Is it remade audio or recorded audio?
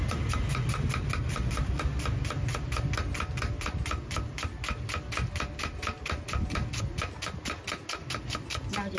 recorded